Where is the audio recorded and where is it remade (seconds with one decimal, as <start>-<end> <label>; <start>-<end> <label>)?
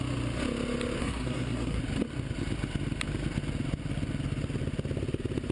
0.0-1.0 recorded; 1.0-1.8 remade; 1.8-5.5 recorded